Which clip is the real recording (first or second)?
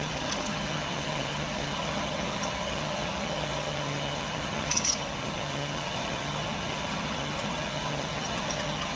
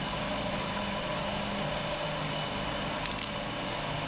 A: second